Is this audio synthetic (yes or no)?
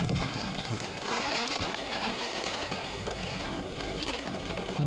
yes